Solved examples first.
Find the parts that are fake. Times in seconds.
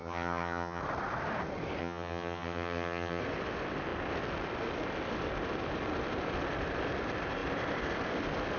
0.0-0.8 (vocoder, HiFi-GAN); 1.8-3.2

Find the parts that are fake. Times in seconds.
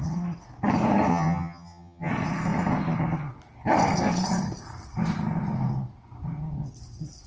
1.1-2.1 (vocoder, HiFi-GAN)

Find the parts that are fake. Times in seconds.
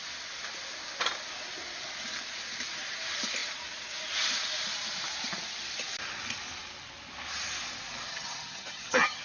8.1-9.2 (vocoder, HiFi-GAN)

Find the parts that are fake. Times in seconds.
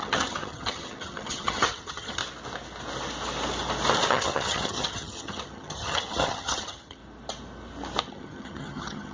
0.0-2.2 (vocoder, HiFi-GAN); 4.1-7.0; 8.0-9.1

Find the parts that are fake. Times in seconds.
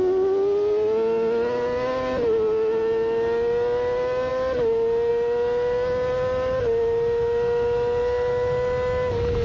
none